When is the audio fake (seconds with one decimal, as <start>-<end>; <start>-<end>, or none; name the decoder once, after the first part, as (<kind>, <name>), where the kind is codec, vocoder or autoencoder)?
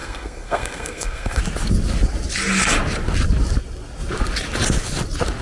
0.0-1.4 (codec, SNAC)